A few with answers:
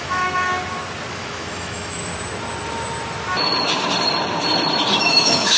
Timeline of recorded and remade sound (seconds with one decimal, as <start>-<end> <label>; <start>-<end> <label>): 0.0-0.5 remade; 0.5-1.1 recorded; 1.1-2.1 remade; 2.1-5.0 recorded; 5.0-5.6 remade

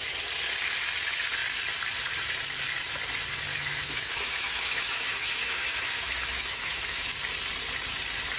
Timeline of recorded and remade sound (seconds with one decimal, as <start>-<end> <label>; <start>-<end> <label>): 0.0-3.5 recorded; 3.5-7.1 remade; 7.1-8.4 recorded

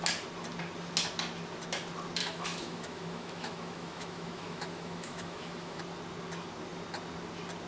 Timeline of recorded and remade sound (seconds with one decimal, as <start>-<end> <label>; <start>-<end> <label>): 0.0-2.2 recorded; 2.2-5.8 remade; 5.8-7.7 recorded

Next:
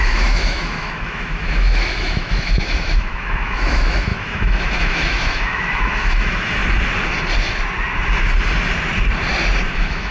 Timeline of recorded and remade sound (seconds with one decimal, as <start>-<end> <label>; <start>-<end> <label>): 0.0-6.6 remade; 6.6-9.7 recorded; 9.7-10.1 remade

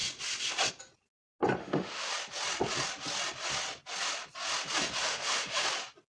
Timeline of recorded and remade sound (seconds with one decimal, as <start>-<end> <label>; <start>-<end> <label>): 0.0-1.6 recorded; 1.6-2.1 remade; 2.1-5.0 recorded; 5.0-5.6 remade; 5.6-6.1 recorded

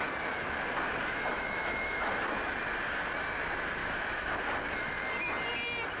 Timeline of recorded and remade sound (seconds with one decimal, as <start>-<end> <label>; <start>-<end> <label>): 0.0-1.3 recorded; 1.3-2.1 remade; 2.1-3.8 recorded; 3.8-4.4 remade; 4.4-6.0 recorded

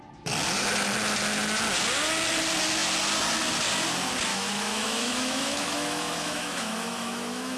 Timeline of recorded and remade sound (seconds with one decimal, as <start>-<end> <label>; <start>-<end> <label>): 0.0-4.3 recorded; 4.3-7.6 remade